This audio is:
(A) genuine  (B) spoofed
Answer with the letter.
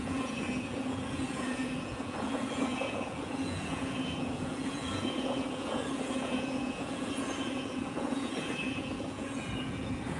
B